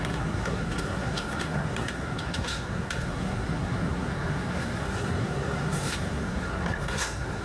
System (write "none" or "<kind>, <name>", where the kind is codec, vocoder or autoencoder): codec, SNAC